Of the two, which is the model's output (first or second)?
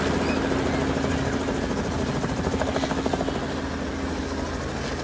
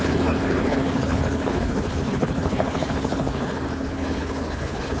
second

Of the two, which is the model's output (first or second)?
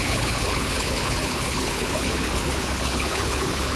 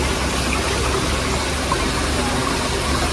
first